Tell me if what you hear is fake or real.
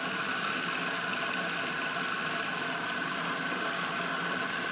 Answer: real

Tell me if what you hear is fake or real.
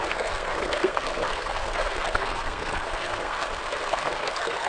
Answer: fake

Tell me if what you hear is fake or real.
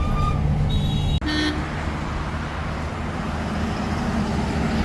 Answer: real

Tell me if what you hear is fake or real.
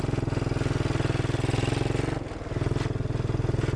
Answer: real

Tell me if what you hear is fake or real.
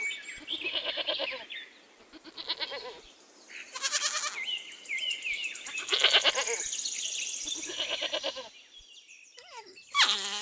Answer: real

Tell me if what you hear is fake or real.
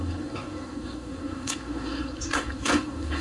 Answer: fake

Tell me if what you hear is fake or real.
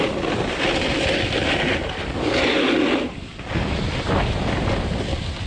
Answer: real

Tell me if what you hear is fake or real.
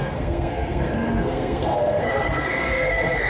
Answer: fake